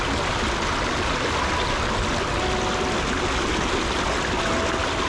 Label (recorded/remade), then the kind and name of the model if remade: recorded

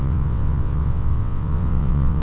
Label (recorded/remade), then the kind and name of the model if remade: remade, vocoder, WaveNeXt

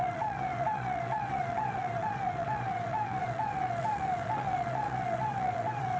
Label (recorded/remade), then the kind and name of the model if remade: remade, vocoder, WaveNeXt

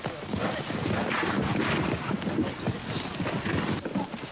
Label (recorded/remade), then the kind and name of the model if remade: recorded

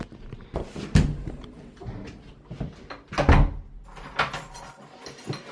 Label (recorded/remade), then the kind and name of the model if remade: recorded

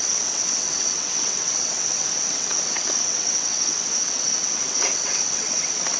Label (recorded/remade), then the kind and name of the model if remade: remade, vocoder, WaveNeXt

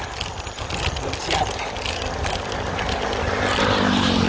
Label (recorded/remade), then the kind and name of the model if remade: recorded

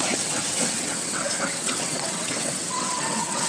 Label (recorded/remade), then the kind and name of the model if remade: remade, vocoder, WaveNeXt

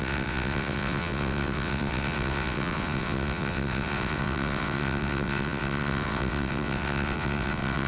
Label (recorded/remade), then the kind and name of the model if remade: remade, vocoder, WaveNeXt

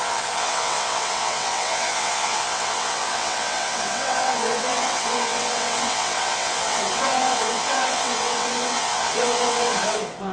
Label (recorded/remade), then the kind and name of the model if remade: remade, vocoder, WaveNeXt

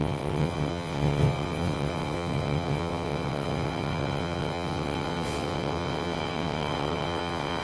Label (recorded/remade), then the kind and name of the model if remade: remade, vocoder, WaveNeXt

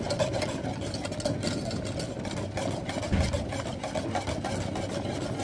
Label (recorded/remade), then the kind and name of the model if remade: recorded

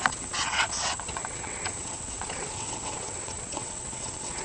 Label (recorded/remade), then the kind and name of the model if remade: remade, vocoder, WaveNeXt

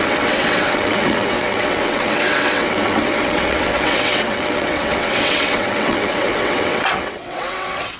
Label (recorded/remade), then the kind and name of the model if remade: remade, vocoder, WaveNeXt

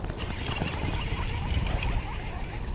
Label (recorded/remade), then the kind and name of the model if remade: recorded